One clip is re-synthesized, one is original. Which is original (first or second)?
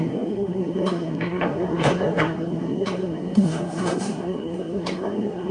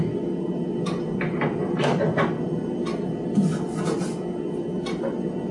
second